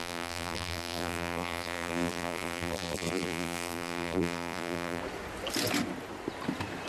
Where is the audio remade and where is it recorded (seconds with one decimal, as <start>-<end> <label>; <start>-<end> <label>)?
0.0-5.0 remade; 5.0-6.9 recorded